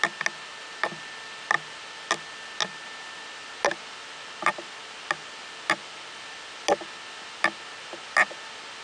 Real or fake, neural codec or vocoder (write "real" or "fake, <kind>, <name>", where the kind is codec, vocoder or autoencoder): real